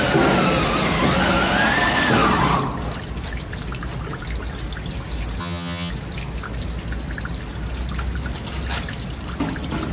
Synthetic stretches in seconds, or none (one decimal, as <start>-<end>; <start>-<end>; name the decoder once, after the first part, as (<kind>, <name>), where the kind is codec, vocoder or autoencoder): 5.4-5.9 (vocoder, HiFi-GAN)